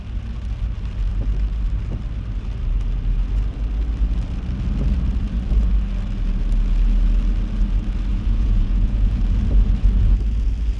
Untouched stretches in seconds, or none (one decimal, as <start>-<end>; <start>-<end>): 0.0-8.1; 9.2-10.8